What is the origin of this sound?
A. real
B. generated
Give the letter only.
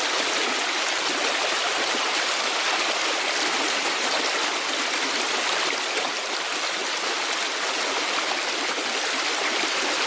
A